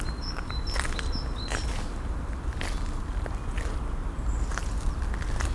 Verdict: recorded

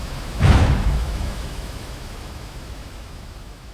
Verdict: remade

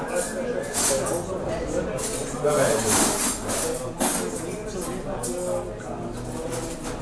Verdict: recorded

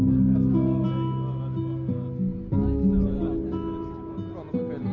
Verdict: recorded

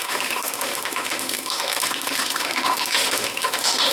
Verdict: remade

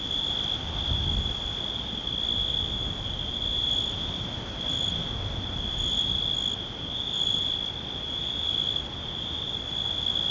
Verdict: recorded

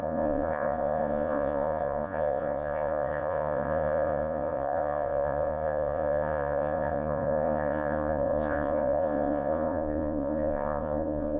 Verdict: remade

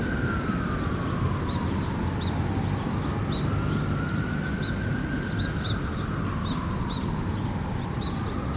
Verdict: recorded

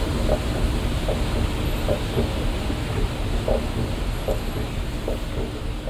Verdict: recorded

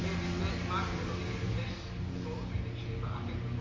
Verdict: recorded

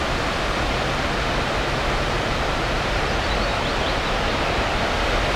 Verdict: recorded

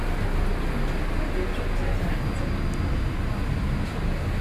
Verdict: recorded